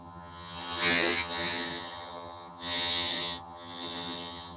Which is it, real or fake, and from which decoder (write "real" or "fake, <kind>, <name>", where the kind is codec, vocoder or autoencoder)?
fake, vocoder, HiFi-GAN